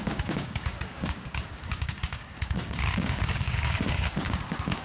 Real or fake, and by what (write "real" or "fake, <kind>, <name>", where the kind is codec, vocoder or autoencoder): fake, codec, DAC